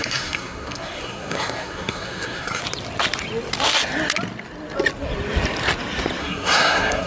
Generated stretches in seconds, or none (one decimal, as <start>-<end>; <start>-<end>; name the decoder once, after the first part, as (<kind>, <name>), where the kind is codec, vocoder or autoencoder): 0.0-2.6 (codec, SNAC); 6.2-7.1